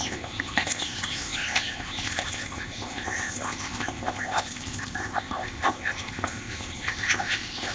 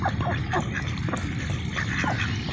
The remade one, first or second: first